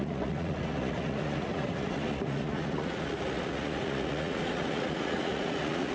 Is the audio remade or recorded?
remade